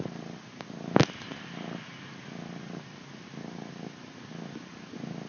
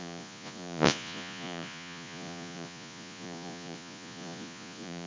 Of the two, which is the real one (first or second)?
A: first